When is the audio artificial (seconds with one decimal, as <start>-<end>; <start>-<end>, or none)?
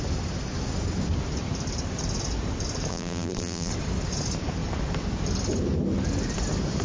2.9-3.7